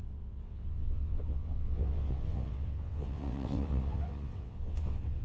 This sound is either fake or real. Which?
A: fake